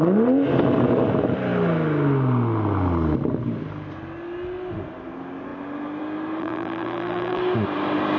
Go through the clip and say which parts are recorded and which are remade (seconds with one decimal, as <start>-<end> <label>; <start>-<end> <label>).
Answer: 0.0-6.4 recorded; 6.4-7.4 remade; 7.4-8.2 recorded